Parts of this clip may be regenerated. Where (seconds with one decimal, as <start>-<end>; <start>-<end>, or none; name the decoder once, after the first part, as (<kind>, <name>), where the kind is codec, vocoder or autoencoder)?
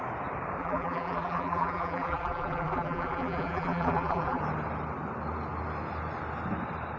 0.6-4.4 (vocoder, BigVGAN v2)